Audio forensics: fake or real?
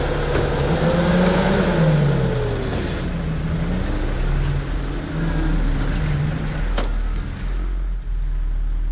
real